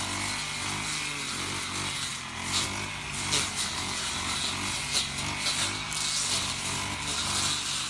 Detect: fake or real real